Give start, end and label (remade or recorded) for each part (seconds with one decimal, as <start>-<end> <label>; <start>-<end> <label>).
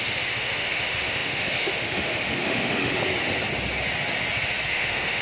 0.0-3.0 remade; 3.0-4.7 recorded; 4.7-5.2 remade